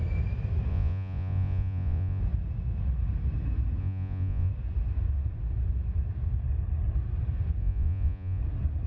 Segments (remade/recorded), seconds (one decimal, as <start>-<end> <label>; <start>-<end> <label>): 0.0-0.7 recorded; 0.7-2.2 remade; 2.2-3.8 recorded; 3.8-4.5 remade; 4.5-7.6 recorded; 7.6-8.4 remade; 8.4-8.9 recorded